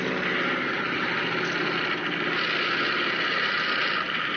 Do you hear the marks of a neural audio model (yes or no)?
no